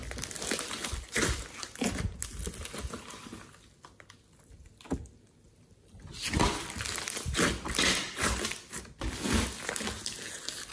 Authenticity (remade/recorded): recorded